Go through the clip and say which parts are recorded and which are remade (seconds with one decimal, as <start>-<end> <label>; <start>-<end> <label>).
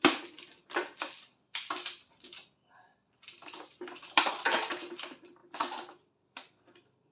0.0-5.4 remade; 5.4-6.1 recorded; 6.1-7.1 remade